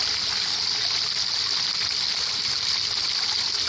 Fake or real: real